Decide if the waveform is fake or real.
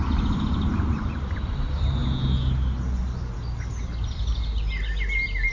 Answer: real